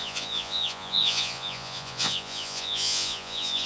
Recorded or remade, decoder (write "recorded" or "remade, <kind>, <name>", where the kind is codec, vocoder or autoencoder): remade, vocoder, Vocos